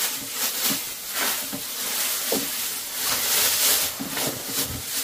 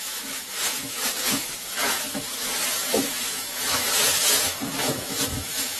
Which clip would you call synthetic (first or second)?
second